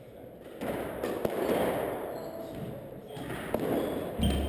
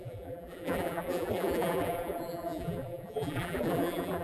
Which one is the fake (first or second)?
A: second